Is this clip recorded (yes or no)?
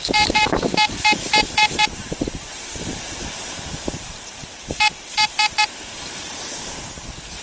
no